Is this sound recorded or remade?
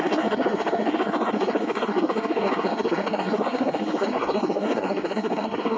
remade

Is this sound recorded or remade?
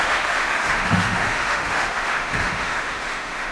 remade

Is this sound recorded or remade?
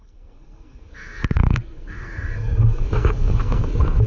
remade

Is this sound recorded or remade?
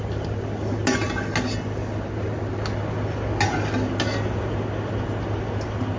recorded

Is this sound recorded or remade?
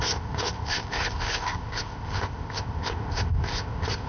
remade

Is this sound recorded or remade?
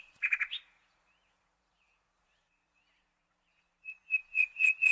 remade